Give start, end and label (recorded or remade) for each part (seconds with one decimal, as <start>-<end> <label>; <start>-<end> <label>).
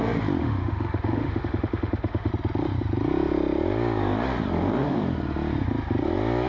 0.0-0.4 recorded; 0.4-2.3 remade; 2.3-6.5 recorded